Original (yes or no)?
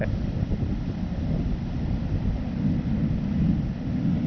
yes